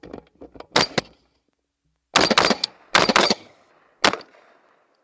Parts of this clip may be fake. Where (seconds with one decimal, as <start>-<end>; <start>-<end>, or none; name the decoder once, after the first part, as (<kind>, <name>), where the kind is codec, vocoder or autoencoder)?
3.2-3.7 (vocoder, HiFi-GAN)